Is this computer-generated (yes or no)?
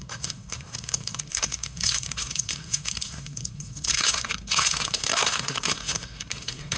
yes